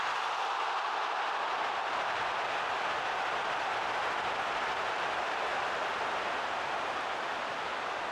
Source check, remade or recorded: recorded